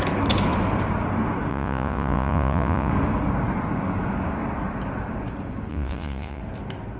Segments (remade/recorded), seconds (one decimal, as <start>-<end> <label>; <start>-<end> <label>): 0.0-1.5 recorded; 1.5-2.9 remade; 2.9-5.7 recorded; 5.7-6.4 remade; 6.4-7.0 recorded